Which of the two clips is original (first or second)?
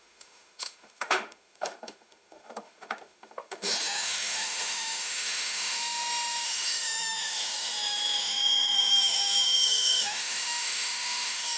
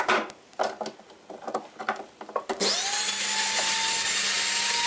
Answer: second